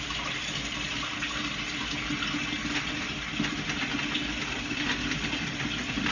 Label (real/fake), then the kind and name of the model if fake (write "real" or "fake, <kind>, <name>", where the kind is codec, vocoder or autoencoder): real